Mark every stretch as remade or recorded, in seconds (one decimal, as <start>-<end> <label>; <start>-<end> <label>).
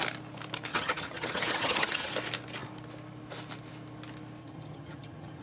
0.0-0.7 recorded; 0.7-2.1 remade; 2.1-4.4 recorded; 4.4-5.4 remade